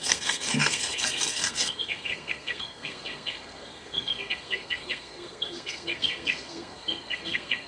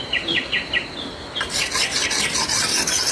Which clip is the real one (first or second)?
second